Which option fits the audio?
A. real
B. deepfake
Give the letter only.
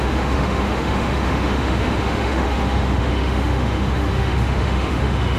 B